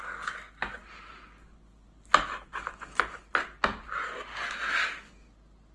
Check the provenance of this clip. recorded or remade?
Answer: recorded